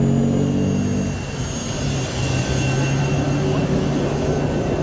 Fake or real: real